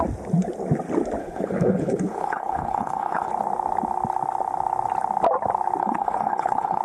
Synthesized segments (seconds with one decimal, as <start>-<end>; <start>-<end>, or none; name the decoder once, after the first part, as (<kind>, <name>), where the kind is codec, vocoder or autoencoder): 1.2-3.3 (codec, HILCodec); 5.8-6.8